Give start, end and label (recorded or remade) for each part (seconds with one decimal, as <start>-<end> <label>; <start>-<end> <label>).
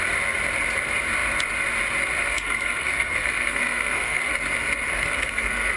0.0-2.2 recorded; 2.2-4.2 remade; 4.2-4.9 recorded; 4.9-5.8 remade